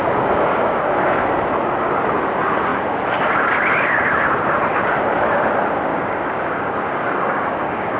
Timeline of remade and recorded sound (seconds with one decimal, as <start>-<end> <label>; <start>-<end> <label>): 0.0-0.8 remade; 0.8-5.9 recorded; 5.9-8.0 remade